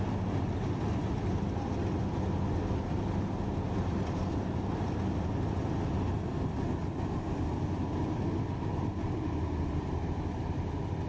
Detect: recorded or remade recorded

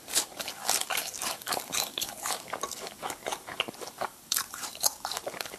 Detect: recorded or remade remade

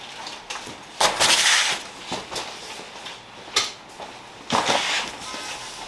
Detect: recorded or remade recorded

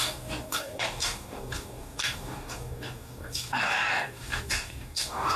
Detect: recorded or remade remade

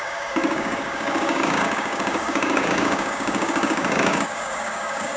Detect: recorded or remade remade